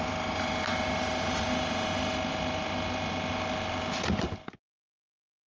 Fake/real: real